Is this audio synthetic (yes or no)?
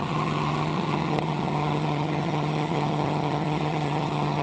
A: yes